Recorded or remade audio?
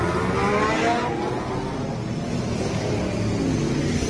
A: recorded